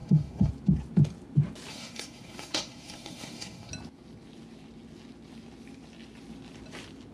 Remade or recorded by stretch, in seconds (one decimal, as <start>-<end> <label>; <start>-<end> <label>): 0.0-0.5 remade; 0.5-1.7 recorded; 1.7-3.7 remade; 3.7-7.1 recorded